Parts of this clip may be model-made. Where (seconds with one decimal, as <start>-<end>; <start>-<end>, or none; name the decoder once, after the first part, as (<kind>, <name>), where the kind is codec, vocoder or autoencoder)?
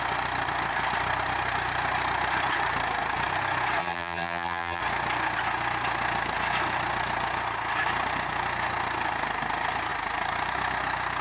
3.8-4.8 (vocoder, BigVGAN v2)